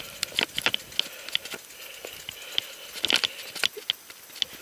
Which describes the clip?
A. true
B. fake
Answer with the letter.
A